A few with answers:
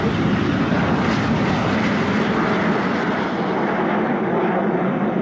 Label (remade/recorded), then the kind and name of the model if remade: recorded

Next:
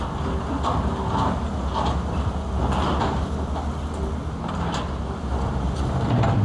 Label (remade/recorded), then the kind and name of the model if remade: recorded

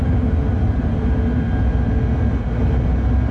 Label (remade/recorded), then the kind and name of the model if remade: recorded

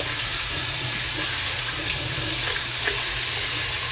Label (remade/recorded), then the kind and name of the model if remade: recorded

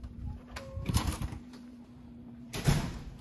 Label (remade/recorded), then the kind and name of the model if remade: remade, vocoder, BigVGAN v2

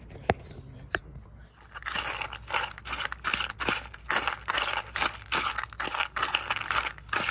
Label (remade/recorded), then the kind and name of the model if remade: recorded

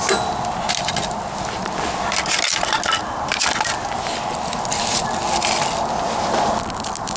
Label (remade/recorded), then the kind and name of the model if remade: recorded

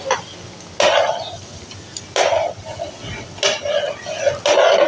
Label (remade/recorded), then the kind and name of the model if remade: recorded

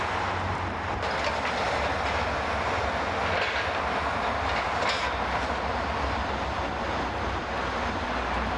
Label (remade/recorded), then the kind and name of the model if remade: recorded